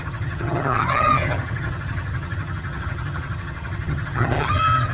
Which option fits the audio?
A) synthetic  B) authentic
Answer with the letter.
A